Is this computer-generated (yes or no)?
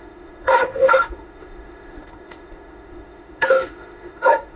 yes